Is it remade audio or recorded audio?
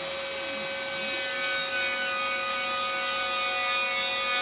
recorded